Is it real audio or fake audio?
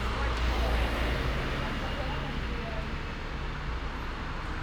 real